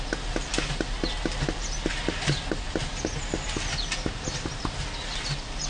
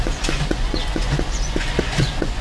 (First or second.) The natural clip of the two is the first